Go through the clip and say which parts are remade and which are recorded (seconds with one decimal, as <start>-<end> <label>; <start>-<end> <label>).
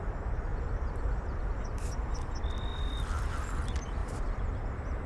0.0-0.5 recorded; 0.5-1.4 remade; 1.4-4.0 recorded; 4.0-5.1 remade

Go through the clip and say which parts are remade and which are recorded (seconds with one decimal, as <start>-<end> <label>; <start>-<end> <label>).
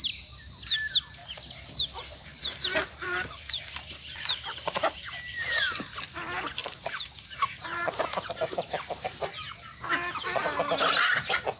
0.0-1.2 recorded; 1.2-5.9 remade; 5.9-6.6 recorded; 6.6-9.1 remade; 9.1-11.6 recorded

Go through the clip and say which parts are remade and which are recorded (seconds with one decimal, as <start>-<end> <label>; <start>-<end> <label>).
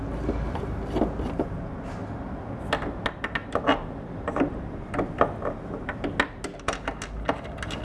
0.0-2.0 recorded; 2.0-2.8 remade; 2.8-3.4 recorded; 3.4-4.9 remade; 4.9-7.8 recorded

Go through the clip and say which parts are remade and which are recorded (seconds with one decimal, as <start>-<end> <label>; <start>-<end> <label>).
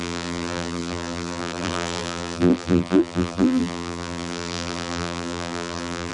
0.0-6.1 remade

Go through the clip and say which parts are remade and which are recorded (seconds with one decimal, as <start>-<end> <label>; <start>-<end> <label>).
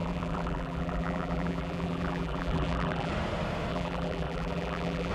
0.0-3.1 remade; 3.1-3.7 recorded; 3.7-5.1 remade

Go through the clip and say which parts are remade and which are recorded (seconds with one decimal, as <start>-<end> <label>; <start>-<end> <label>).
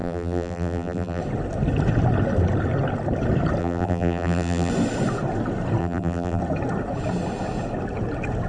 0.0-1.2 remade; 1.2-3.6 recorded; 3.6-4.7 remade; 4.7-5.8 recorded; 5.8-6.4 remade; 6.4-8.5 recorded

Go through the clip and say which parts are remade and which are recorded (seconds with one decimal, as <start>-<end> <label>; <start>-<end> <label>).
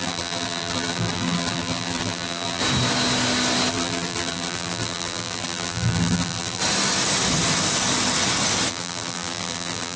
0.0-2.6 remade; 2.6-3.7 recorded; 3.7-6.6 remade; 6.6-8.7 recorded; 8.7-10.0 remade